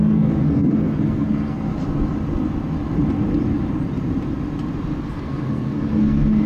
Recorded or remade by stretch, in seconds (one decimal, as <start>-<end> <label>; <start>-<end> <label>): 0.0-1.7 remade; 1.7-5.1 recorded; 5.1-6.5 remade